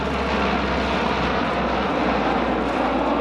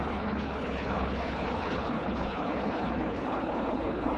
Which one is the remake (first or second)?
second